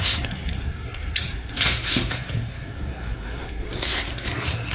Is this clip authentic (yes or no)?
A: no